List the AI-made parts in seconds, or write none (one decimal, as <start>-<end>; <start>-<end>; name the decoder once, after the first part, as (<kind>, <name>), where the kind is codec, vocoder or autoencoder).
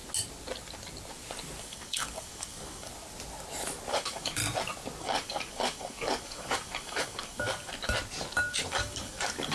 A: 1.6-2.9 (codec, DAC); 3.9-4.4; 5.0-7.7; 8.5-9.5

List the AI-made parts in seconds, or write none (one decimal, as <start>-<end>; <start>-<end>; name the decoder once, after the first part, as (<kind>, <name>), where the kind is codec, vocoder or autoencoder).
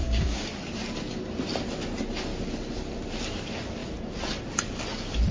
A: 0.0-0.5 (codec, DAC)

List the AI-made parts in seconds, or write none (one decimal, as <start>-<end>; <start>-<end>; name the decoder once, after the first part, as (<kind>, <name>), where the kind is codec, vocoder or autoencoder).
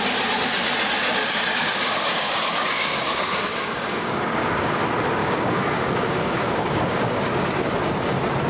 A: 1.2-4.8 (codec, DAC); 5.2-7.2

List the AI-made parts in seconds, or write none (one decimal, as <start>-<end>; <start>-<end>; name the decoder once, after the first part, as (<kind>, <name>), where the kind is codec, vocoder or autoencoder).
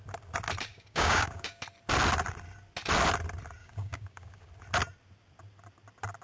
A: 0.7-1.6 (codec, DAC); 3.6-4.5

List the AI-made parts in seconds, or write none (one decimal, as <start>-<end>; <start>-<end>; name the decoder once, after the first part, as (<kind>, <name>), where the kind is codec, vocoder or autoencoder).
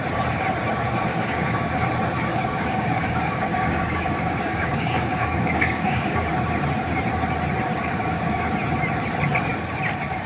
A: 1.1-1.7 (codec, DAC); 2.3-6.3; 7.7-8.5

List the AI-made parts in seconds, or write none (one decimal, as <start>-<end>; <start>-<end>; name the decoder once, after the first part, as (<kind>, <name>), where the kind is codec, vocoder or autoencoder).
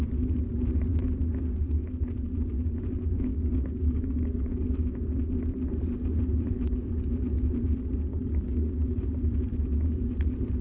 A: 3.3-4.7 (codec, DAC); 8.1-9.0